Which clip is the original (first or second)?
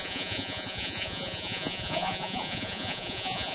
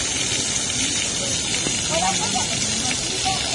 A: second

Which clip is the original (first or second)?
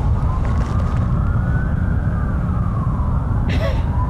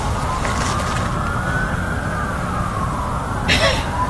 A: second